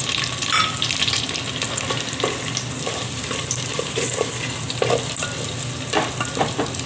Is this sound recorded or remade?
recorded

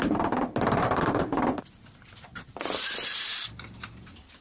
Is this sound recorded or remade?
recorded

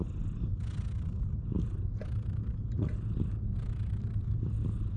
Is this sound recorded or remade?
recorded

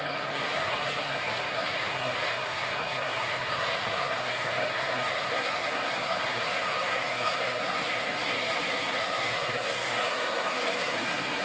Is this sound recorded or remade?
remade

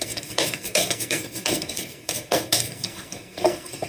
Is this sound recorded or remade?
remade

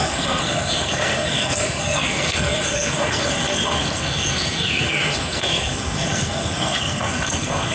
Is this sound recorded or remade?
remade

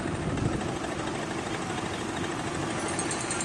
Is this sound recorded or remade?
recorded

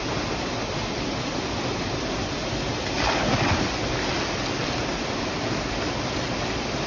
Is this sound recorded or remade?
recorded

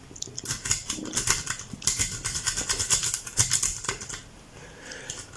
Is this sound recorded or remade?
recorded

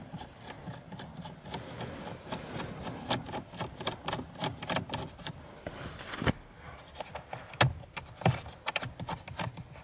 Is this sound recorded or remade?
recorded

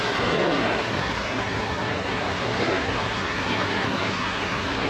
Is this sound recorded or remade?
remade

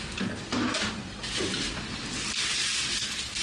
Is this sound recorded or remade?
recorded